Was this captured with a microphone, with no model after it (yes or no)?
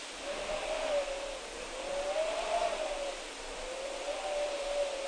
yes